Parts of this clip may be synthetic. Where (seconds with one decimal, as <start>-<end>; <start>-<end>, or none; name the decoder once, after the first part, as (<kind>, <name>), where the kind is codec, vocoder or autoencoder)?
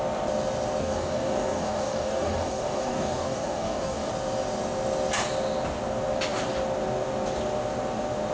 0.8-4.1 (codec, DAC)